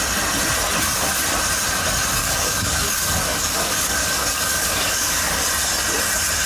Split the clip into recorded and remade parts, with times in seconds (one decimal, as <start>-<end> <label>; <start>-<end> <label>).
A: 0.0-2.2 recorded; 2.2-5.5 remade; 5.5-6.5 recorded